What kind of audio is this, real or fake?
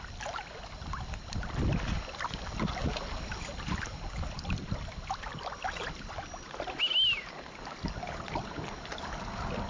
real